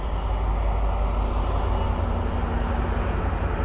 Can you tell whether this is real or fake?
real